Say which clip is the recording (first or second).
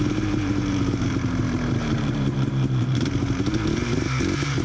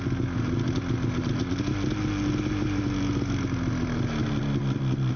second